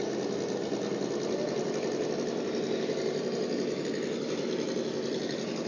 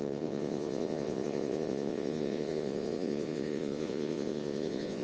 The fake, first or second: second